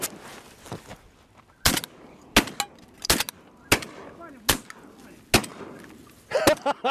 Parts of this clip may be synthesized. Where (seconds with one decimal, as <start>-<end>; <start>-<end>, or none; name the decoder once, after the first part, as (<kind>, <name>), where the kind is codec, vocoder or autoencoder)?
none